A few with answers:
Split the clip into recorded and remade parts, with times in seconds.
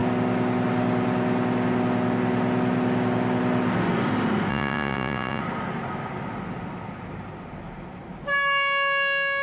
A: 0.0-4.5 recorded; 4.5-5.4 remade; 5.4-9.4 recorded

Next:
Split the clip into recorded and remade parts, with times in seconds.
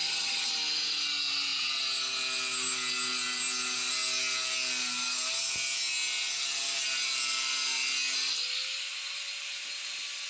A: 0.0-0.5 remade; 0.5-10.3 recorded